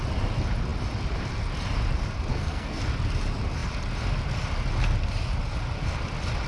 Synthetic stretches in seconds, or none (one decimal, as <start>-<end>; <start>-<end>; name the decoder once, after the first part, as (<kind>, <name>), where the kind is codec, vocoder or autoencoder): 2.3-2.8 (codec, SNAC)